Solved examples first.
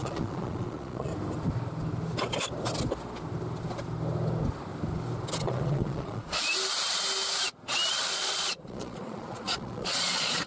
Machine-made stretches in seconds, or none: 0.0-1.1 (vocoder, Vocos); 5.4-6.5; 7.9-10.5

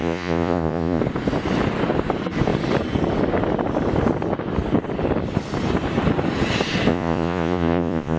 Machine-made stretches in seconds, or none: 0.0-1.0 (vocoder, Vocos); 6.9-8.2

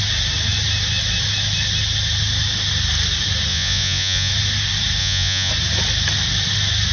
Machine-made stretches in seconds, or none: 3.5-4.3 (vocoder, Vocos); 5.0-5.5

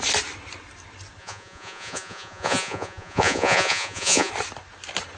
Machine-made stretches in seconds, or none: 1.2-4.3 (vocoder, Vocos)

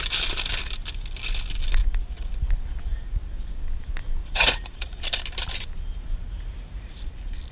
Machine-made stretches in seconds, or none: 1.8-2.3 (vocoder, Vocos); 4.2-5.0; 6.0-7.1

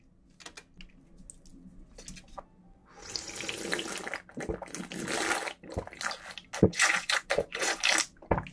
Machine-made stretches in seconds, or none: 6.7-7.8 (vocoder, Vocos)